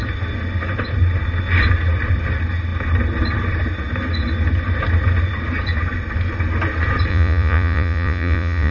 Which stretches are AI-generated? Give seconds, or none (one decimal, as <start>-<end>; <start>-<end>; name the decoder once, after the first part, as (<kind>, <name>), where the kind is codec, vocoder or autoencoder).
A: 7.1-8.7 (vocoder, Vocos)